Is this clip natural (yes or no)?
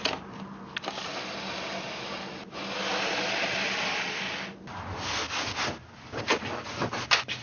yes